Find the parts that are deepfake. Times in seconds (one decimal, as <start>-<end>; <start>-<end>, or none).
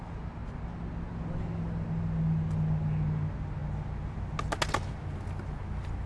none